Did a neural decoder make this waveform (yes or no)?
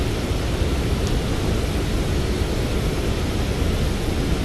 no